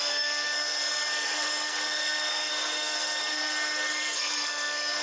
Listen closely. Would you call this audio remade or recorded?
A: remade